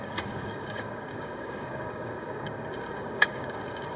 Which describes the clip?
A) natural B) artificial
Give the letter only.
B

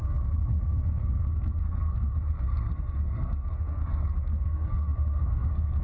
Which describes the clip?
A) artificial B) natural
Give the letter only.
A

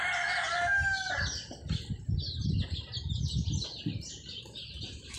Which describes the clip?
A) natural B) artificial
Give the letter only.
A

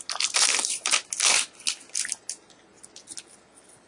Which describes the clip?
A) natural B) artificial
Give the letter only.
A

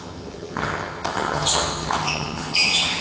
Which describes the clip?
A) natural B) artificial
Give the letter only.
B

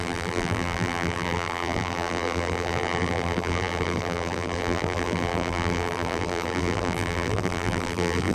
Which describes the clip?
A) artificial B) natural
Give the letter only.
A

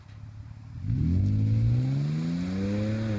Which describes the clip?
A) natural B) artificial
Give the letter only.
A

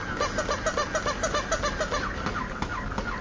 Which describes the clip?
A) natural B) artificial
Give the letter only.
A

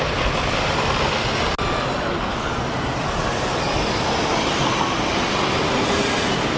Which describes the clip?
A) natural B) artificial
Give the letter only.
A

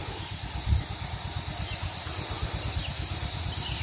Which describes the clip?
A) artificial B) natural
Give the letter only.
B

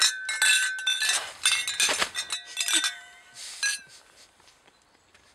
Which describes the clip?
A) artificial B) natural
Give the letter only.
B